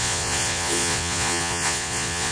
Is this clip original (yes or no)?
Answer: no